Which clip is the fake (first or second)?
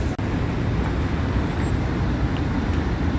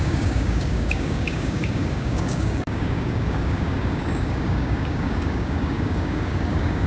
second